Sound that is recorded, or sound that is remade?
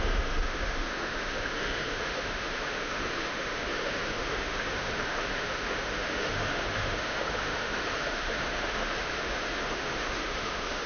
remade